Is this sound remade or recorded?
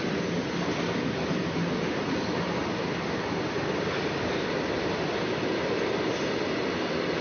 recorded